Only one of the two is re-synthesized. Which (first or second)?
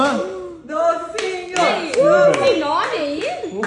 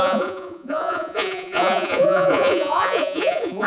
second